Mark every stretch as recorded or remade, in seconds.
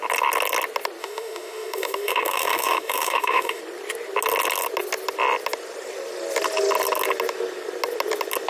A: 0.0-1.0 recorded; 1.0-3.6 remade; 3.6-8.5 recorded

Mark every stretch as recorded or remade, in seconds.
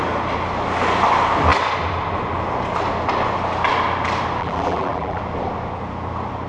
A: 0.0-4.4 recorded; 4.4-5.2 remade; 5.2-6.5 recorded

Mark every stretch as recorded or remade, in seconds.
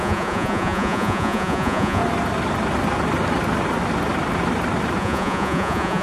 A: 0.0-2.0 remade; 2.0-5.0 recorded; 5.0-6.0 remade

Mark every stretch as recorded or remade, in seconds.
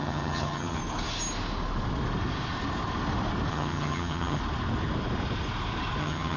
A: 0.0-0.8 remade; 0.8-3.5 recorded; 3.5-4.4 remade; 4.4-6.0 recorded; 6.0-6.4 remade